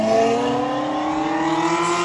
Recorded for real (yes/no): yes